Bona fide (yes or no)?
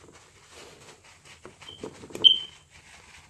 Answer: yes